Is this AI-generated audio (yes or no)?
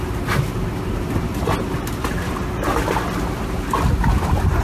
no